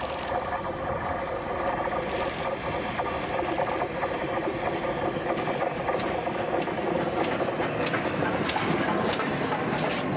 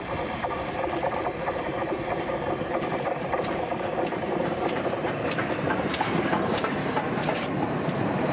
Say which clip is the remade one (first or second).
second